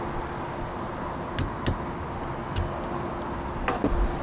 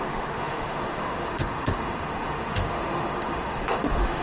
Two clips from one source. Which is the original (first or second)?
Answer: first